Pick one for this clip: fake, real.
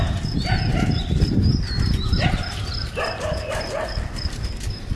real